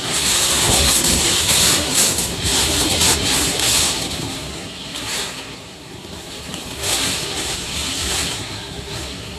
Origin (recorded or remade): remade